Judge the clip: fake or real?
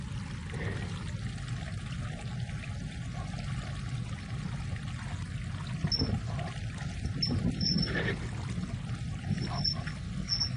real